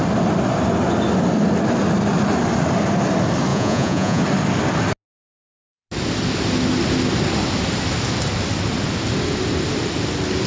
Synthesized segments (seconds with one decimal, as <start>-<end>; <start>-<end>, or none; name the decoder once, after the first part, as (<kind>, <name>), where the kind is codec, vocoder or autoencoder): 3.5-4.2 (vocoder, Vocos)